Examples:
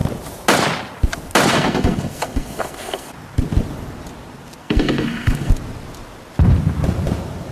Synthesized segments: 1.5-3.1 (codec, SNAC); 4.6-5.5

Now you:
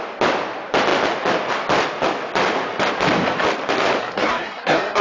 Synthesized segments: 4.0-5.0 (codec, SNAC)

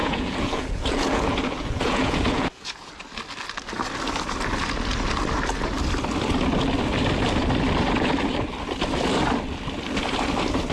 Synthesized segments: 0.0-2.9 (vocoder, Vocos)